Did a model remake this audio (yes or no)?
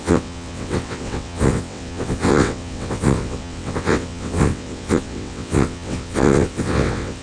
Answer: yes